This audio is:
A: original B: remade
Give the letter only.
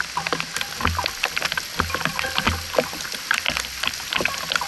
A